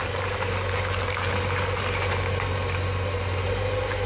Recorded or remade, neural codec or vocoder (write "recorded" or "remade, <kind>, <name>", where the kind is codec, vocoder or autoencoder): recorded